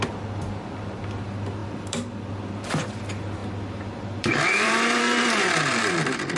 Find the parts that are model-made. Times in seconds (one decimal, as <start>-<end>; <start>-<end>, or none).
0.0-6.4